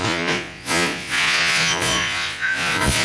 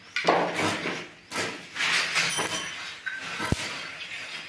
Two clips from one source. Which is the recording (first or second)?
second